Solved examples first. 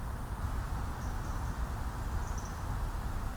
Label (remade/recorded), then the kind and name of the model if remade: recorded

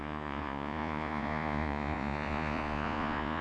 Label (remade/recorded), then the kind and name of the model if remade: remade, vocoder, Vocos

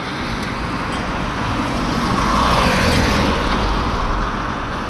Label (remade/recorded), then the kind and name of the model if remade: remade, vocoder, Vocos